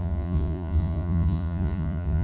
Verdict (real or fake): fake